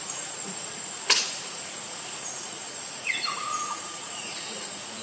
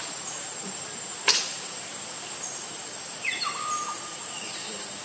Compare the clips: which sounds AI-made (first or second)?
first